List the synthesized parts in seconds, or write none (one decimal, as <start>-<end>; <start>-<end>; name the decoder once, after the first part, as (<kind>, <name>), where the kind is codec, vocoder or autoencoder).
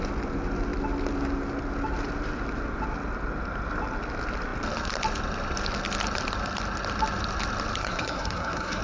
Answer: 7.8-8.8 (codec, SNAC)